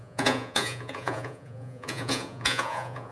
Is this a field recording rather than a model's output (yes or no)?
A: no